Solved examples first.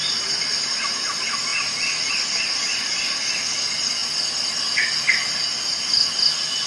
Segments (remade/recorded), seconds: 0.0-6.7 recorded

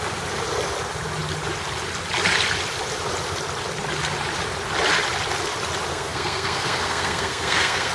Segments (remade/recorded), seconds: 0.0-5.9 recorded; 5.9-7.9 remade

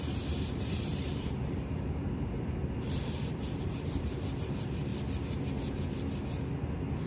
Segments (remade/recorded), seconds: 0.0-4.9 remade; 4.9-7.1 recorded

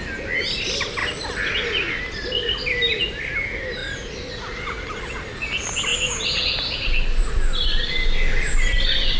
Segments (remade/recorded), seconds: 0.0-9.2 recorded

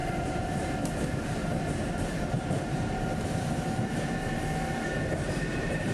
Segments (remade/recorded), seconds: 0.0-5.9 remade

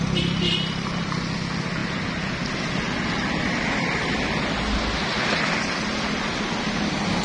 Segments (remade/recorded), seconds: 0.0-7.2 recorded